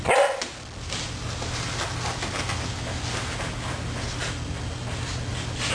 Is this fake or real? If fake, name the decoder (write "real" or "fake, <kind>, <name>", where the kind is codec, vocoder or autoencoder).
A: real